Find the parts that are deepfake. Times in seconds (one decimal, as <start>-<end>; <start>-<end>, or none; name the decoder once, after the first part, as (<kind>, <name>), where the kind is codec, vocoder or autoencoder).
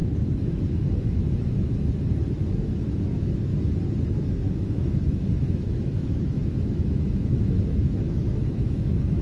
0.0-3.5 (autoencoder, DAC-VAE); 4.0-9.2